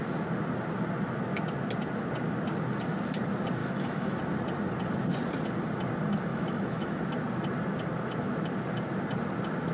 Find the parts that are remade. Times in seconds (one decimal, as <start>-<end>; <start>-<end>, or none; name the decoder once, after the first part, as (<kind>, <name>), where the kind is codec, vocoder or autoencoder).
3.6-4.2 (autoencoder, DAC-VAE); 6.3-7.0